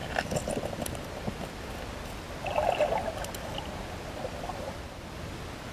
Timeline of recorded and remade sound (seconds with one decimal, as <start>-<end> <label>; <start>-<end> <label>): 0.0-5.7 recorded